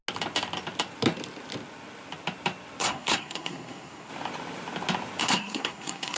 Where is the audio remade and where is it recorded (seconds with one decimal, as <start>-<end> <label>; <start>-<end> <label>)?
0.0-2.8 recorded; 2.8-4.1 remade; 4.1-5.2 recorded; 5.2-6.2 remade